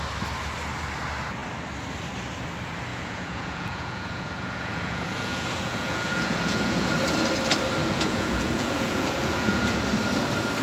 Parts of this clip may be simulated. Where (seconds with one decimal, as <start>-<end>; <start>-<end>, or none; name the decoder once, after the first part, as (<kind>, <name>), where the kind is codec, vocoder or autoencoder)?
2.9-6.9 (vocoder, Vocos); 7.8-9.8

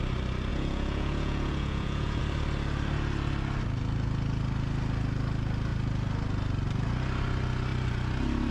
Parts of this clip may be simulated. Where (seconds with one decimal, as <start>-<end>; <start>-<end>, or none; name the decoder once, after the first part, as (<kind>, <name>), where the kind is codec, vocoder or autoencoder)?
0.5-2.2 (vocoder, Vocos)

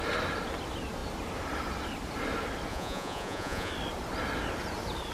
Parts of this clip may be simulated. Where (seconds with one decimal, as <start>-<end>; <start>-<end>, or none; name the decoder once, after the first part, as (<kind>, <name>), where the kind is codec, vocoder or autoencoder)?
2.7-3.7 (vocoder, Vocos)

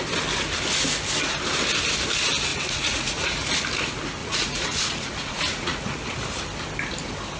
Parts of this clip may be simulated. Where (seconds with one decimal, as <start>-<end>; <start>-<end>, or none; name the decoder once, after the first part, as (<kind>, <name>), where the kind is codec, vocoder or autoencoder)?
2.5-3.5 (vocoder, Vocos); 4.2-6.0

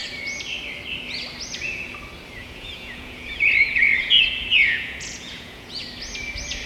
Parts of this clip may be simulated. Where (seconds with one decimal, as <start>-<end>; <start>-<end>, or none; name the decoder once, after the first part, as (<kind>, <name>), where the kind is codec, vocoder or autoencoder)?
2.4-5.8 (vocoder, Vocos)

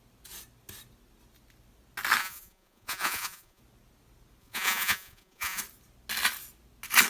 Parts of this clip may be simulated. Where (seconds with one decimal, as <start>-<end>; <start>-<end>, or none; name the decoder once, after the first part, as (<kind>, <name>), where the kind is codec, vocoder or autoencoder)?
2.2-3.6 (vocoder, Vocos); 4.4-5.6